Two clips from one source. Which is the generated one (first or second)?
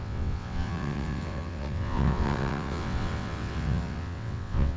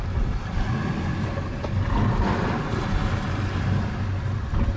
first